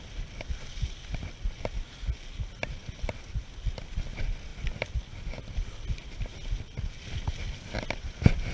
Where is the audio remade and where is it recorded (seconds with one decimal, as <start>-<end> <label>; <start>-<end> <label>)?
0.0-8.5 recorded